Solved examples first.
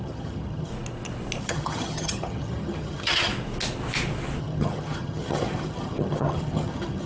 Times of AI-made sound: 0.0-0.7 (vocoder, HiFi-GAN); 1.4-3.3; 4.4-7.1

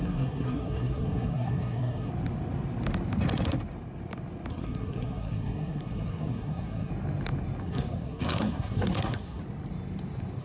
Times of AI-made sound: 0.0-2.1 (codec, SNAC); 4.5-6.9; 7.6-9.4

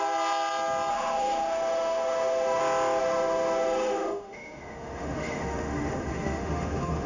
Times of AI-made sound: 0.9-2.6 (autoencoder, DAC-VAE); 3.0-7.1

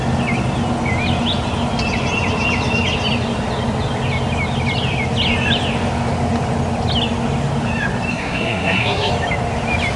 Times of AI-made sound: 8.1-9.1 (codec, SNAC)

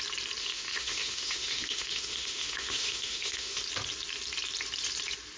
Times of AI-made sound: 0.4-3.6 (autoencoder, DAC-VAE)

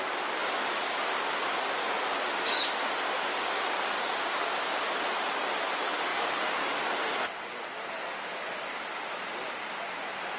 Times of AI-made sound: 3.3-4.8 (codec, DAC)

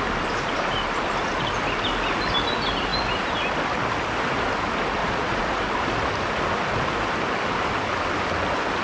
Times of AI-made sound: 5.0-5.6 (vocoder, Vocos)

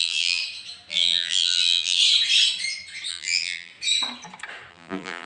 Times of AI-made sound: 0.0-0.4 (vocoder, BigVGAN v2); 0.9-2.0; 3.1-3.7; 4.7-5.3